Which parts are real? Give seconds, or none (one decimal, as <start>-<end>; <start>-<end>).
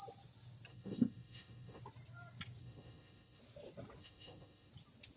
0.0-0.7; 1.8-2.6; 3.4-4.0; 4.7-5.2